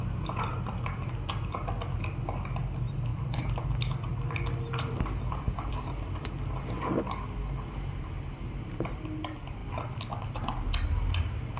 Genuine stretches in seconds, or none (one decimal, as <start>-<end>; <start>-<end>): 0.0-3.1; 3.6-4.1; 5.7-11.6